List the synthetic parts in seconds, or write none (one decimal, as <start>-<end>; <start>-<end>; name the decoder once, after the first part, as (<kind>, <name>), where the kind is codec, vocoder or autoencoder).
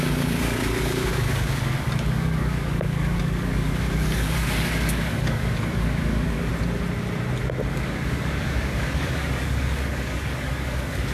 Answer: 0.0-6.5 (codec, DAC); 7.7-11.1